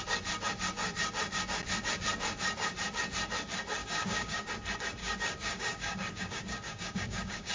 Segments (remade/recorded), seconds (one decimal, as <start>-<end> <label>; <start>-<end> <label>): 0.0-3.8 recorded; 3.8-4.5 remade; 4.5-5.0 recorded; 5.0-7.5 remade